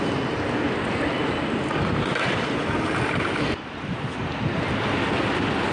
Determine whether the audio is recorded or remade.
recorded